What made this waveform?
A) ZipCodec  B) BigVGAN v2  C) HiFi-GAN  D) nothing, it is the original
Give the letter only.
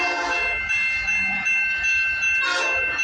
D